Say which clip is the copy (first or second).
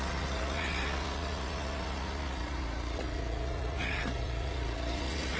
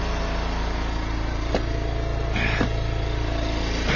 first